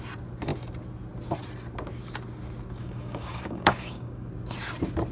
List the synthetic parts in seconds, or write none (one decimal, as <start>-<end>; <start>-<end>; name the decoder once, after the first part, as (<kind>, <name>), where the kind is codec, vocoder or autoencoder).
2.8-4.3 (codec, DAC)